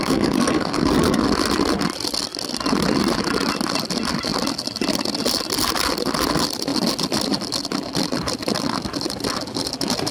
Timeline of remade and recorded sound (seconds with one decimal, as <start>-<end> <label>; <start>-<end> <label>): 0.0-1.2 remade; 1.2-10.1 recorded